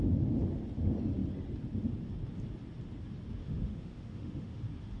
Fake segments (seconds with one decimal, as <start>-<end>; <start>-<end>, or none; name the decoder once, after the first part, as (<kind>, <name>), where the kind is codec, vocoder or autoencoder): 3.4-4.6 (autoencoder, DAC-VAE)